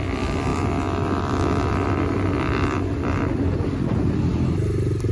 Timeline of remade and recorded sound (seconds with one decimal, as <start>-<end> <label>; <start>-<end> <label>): 0.0-5.1 recorded